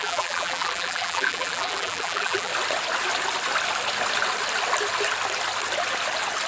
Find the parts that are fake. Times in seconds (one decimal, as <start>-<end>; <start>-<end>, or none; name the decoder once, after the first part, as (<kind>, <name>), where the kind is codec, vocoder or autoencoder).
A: 0.0-2.5 (vocoder, BigVGAN v2)